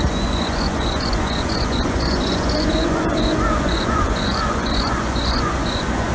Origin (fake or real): fake